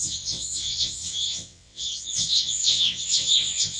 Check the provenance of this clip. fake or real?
fake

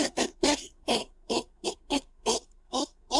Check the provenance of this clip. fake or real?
fake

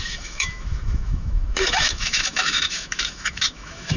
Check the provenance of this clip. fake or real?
fake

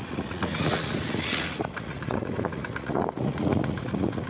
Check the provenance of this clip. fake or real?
fake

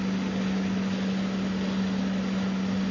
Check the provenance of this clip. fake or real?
real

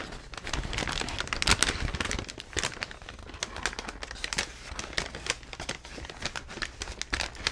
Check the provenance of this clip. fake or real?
real